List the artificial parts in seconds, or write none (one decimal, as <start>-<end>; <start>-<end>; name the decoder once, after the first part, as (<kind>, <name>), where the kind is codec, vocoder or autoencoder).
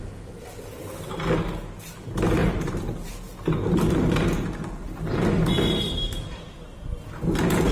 2.4-3.1 (vocoder, BigVGAN v2)